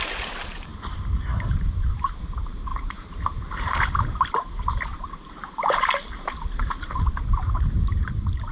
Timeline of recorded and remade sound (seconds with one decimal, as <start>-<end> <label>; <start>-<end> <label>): 0.0-8.5 remade